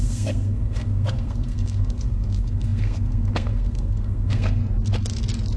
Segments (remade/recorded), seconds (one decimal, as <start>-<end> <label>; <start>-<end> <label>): 0.0-4.6 remade; 4.6-5.6 recorded